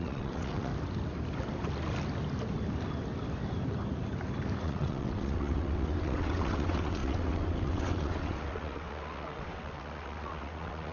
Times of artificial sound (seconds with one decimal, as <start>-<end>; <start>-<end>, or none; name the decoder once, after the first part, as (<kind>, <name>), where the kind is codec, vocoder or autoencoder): 0.0-0.7 (vocoder, WaveNeXt); 4.6-10.9